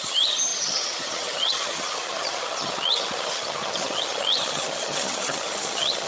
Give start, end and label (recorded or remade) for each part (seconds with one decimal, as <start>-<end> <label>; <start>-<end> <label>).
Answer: 0.0-6.1 remade